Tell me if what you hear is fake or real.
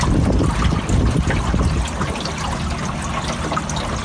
real